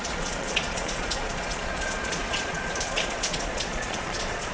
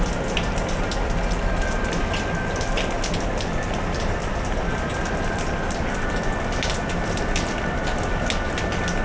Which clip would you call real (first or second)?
second